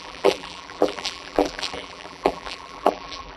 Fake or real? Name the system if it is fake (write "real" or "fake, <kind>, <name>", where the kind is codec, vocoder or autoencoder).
fake, vocoder, BigVGAN v2